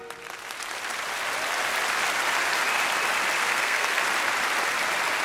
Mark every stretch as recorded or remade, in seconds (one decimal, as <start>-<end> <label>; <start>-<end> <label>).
0.0-3.4 recorded; 3.4-4.0 remade; 4.0-5.2 recorded